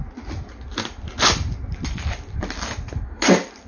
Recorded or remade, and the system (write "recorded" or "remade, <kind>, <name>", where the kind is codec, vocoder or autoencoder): recorded